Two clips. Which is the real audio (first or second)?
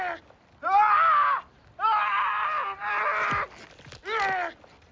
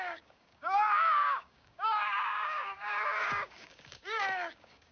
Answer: first